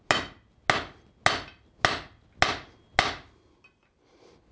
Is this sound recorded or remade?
recorded